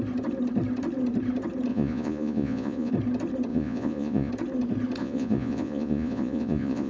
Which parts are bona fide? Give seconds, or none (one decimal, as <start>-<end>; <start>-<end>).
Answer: 0.0-1.7; 2.9-3.5; 4.3-5.0